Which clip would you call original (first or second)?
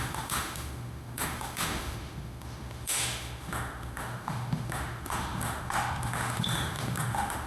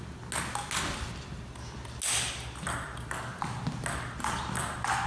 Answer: second